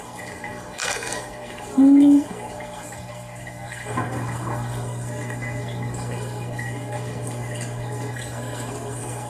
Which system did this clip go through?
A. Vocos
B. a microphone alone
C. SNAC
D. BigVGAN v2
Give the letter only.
C